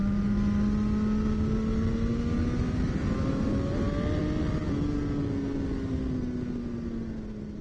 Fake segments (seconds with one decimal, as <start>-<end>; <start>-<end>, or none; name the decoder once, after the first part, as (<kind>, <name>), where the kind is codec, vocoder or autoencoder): none